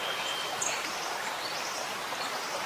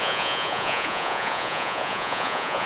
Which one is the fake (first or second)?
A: second